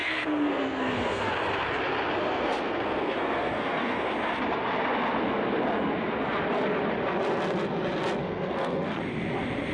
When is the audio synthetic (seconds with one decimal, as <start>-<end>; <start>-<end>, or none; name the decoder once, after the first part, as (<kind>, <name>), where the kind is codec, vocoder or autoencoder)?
0.0-1.3 (codec, SNAC); 2.2-4.1; 8.2-9.0